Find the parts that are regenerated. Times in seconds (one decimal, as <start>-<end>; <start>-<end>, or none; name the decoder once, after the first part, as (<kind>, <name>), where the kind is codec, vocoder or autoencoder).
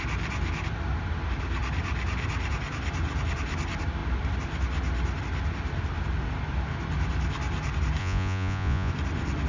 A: 8.0-8.9 (vocoder, Vocos)